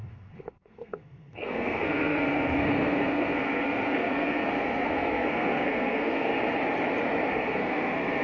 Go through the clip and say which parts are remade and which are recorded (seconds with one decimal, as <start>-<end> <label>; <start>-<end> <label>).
0.0-6.3 remade; 6.3-7.3 recorded; 7.3-8.2 remade